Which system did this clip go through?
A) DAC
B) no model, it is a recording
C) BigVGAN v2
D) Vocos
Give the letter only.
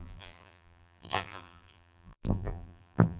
C